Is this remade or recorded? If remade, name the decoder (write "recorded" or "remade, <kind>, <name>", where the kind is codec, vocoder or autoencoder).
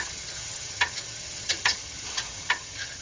remade, vocoder, HiFi-GAN